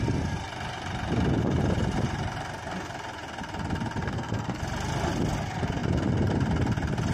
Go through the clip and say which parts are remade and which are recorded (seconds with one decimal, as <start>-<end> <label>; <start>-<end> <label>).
0.0-4.0 recorded; 4.0-4.6 remade; 4.6-7.1 recorded